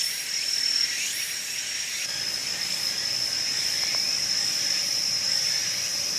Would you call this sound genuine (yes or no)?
yes